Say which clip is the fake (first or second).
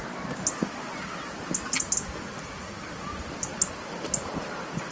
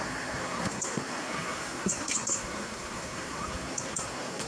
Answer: second